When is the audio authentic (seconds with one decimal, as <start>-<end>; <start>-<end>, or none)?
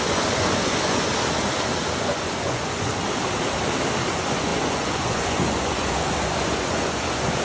1.1-2.0; 2.9-4.1